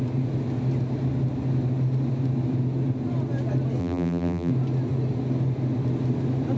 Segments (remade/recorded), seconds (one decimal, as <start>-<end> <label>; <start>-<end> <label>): 0.0-3.8 recorded; 3.8-4.5 remade; 4.5-6.6 recorded